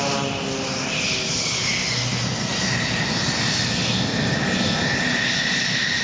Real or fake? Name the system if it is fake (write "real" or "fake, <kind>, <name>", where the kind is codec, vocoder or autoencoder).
real